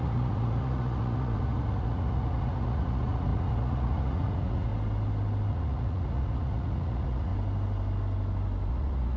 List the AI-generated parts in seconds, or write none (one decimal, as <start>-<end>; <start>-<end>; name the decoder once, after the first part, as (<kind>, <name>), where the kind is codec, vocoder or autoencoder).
0.0-4.7 (vocoder, Vocos); 5.5-7.3; 8.7-9.2